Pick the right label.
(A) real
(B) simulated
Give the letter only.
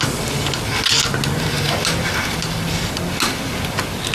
A